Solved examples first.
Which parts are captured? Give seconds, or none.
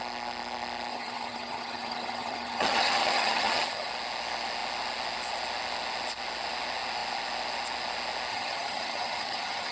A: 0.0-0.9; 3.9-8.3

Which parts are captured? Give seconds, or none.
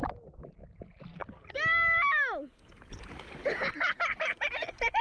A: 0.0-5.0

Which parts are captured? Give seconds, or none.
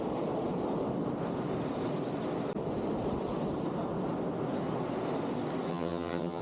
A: 0.0-5.7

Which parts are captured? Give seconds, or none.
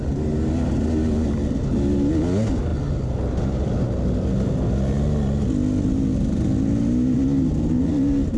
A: 0.0-8.4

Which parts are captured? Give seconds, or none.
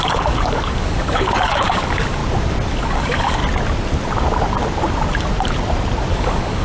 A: 2.2-2.7; 3.4-6.1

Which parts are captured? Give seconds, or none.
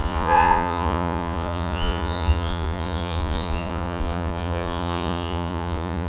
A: none